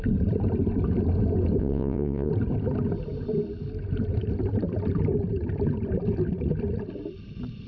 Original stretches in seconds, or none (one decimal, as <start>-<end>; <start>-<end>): 0.0-1.6; 2.3-7.7